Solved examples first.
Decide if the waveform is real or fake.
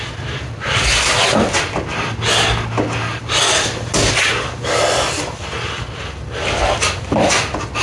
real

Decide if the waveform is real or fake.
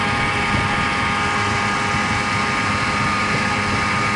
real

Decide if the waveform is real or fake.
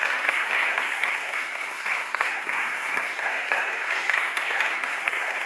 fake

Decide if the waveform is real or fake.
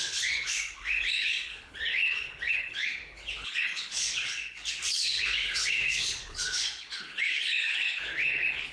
fake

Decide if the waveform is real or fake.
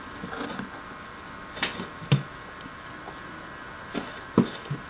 real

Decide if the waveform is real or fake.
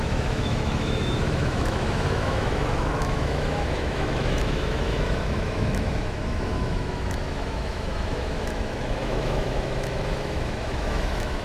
fake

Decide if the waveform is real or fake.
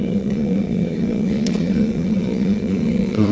fake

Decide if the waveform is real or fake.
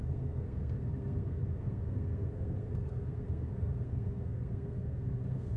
fake